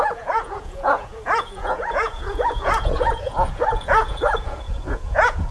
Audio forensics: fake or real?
fake